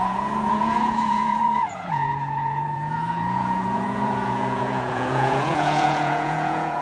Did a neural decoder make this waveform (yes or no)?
yes